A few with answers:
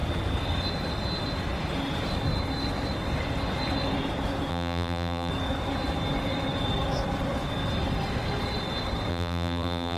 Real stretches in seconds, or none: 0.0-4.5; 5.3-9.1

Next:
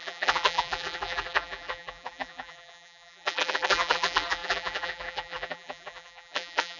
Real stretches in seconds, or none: none

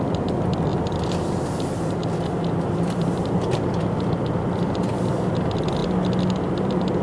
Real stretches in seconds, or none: 0.7-2.5; 5.8-6.4

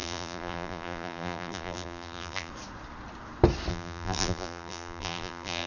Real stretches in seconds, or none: 2.5-3.7

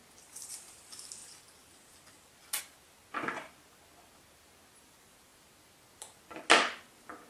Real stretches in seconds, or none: 0.0-7.3